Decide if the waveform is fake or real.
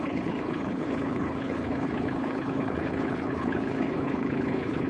fake